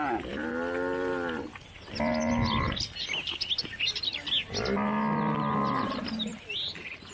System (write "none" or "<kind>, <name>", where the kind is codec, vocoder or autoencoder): none